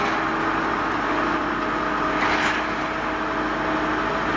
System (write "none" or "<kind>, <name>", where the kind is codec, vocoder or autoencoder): none